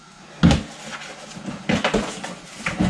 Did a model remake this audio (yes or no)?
no